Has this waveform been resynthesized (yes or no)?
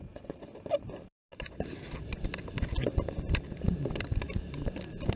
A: no